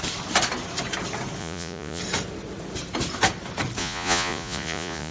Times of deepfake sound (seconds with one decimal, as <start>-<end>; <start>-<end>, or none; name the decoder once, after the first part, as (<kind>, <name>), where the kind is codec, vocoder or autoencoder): 1.4-2.0 (vocoder, Vocos); 3.8-5.1